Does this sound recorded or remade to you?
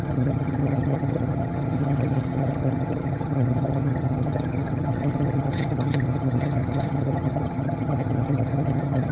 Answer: remade